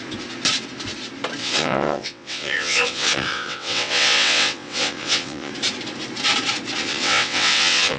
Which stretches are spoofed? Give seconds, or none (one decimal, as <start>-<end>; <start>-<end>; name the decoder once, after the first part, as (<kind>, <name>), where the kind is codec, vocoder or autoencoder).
1.4-5.5 (vocoder, WaveNeXt); 6.8-8.0